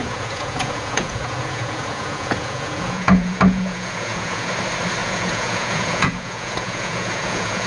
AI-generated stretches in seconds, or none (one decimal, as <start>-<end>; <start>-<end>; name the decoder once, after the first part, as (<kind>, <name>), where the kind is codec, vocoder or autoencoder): 0.0-4.5 (vocoder, Vocos); 5.0-7.7